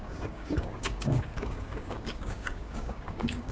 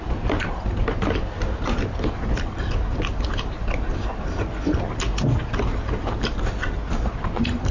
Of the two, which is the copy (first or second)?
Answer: first